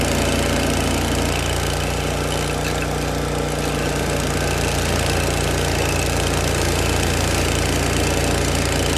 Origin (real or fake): real